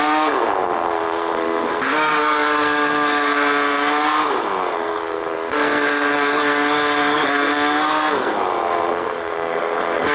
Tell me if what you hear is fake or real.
fake